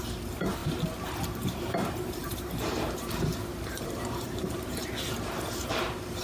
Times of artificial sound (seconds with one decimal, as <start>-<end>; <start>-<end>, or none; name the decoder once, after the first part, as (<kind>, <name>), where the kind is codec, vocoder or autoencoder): 0.0-6.2 (vocoder, BigVGAN v2)